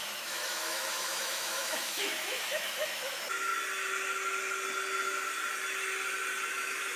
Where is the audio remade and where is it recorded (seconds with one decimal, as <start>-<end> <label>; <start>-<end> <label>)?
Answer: 0.0-3.5 remade; 3.5-6.5 recorded; 6.5-7.0 remade